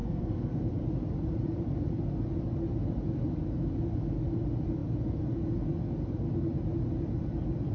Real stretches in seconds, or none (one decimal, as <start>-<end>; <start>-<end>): 0.7-7.7